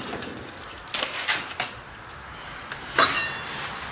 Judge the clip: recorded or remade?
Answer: remade